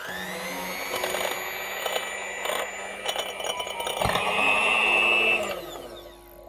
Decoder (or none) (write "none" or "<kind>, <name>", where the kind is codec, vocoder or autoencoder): none